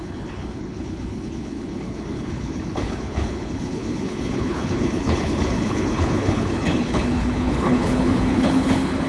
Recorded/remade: remade